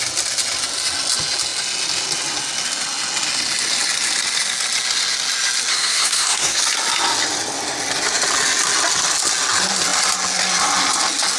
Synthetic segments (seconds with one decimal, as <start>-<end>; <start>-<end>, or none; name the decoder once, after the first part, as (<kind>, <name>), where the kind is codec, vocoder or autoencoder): 5.7-6.6 (codec, SNAC)